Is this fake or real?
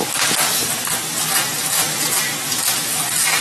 real